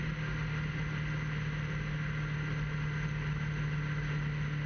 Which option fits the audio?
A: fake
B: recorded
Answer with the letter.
B